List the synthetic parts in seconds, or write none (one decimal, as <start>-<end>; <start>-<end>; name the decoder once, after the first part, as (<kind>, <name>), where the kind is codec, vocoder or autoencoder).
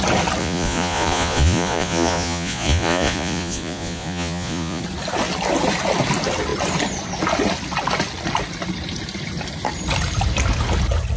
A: 0.4-4.8 (vocoder, Vocos)